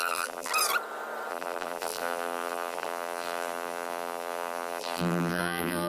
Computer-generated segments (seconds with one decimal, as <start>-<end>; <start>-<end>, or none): 0.0-0.5; 1.3-5.9